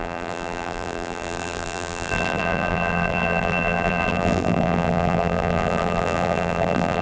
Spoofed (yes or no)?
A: yes